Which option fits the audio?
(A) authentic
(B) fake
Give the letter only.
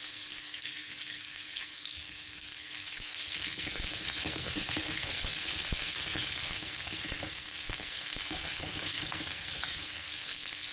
B